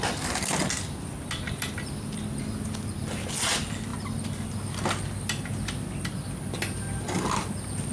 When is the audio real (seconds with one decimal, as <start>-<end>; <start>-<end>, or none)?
0.0-7.9

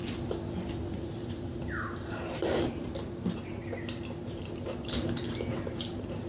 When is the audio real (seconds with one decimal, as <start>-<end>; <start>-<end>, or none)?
0.0-0.9; 3.6-4.2

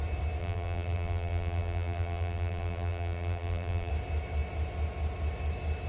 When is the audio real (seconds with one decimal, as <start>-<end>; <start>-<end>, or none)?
0.0-0.4; 3.9-5.9

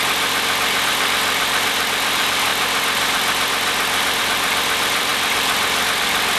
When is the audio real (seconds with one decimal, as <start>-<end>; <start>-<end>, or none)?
2.5-4.2